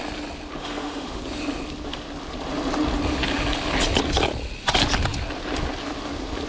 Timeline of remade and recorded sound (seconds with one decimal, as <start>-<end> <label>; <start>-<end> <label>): 0.0-0.6 recorded; 0.6-1.2 remade; 1.2-6.5 recorded